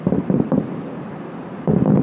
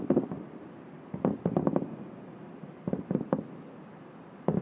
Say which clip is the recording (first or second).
second